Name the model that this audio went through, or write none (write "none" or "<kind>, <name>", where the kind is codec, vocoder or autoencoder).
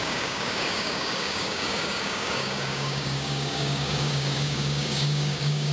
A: codec, DAC